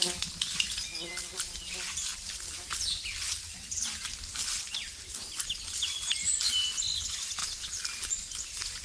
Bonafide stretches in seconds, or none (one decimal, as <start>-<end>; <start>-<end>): 0.0-8.8